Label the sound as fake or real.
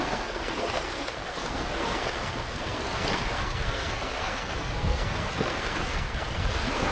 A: fake